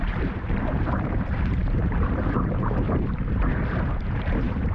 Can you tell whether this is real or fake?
fake